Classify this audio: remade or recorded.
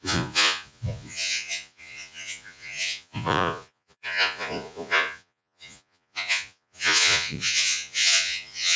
remade